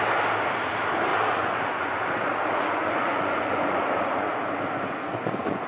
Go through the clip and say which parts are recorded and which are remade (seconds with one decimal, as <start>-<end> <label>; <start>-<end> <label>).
0.0-1.1 recorded; 1.1-4.5 remade; 4.5-5.0 recorded; 5.0-5.7 remade